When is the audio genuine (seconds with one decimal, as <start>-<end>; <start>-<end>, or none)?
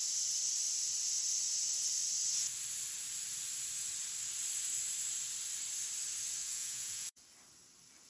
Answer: 0.0-6.4; 7.2-8.1